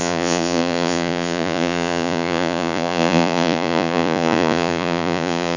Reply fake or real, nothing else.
fake